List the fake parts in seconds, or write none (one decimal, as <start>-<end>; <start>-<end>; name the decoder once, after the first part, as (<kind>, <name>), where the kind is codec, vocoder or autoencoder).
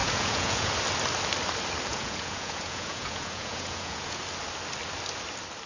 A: 0.0-0.7 (vocoder, Vocos); 1.9-4.2